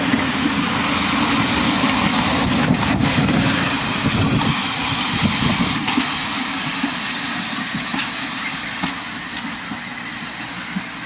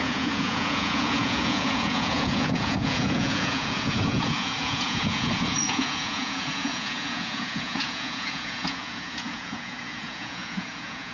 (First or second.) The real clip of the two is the first